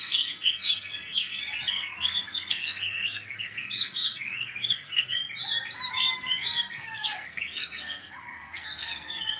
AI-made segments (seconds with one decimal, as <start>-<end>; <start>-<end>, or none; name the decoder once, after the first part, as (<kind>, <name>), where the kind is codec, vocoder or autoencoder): 0.0-5.2 (codec, SNAC); 5.9-9.4